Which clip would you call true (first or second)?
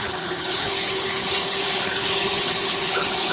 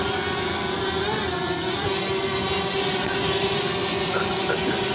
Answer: second